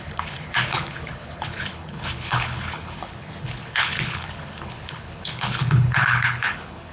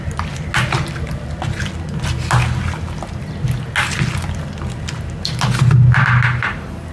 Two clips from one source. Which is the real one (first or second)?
second